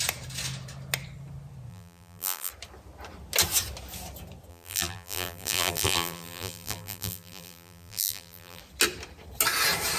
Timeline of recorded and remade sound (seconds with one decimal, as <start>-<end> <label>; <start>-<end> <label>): 0.0-1.7 recorded; 1.7-2.5 remade; 2.5-4.5 recorded; 4.5-8.6 remade; 8.6-10.0 recorded